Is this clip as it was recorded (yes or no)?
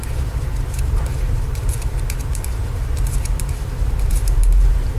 no